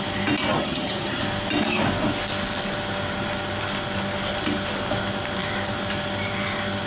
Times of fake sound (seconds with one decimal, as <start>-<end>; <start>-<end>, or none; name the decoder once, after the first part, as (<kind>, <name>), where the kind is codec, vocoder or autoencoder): 0.5-1.2 (vocoder, HiFi-GAN)